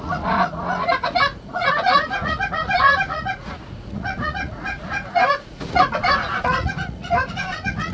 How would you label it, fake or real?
fake